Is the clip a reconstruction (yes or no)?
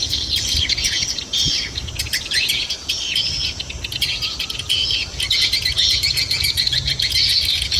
yes